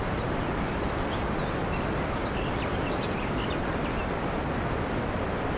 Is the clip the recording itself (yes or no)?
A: yes